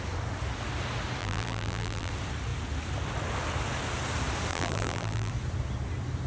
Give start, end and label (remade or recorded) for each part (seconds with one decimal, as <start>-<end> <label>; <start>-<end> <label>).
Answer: 0.0-1.2 recorded; 1.2-2.1 remade; 2.1-4.5 recorded; 4.5-5.3 remade; 5.3-6.3 recorded